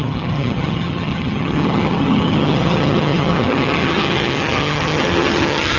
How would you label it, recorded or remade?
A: remade